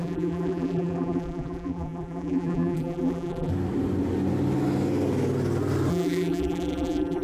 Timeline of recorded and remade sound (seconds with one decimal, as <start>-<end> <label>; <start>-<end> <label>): 0.0-3.5 remade; 3.5-5.9 recorded; 5.9-7.2 remade